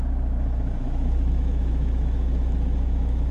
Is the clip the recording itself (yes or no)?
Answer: no